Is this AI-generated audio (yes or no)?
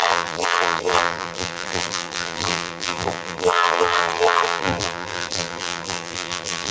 yes